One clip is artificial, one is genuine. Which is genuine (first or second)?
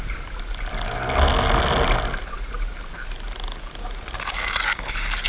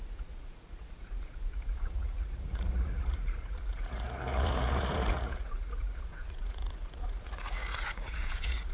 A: first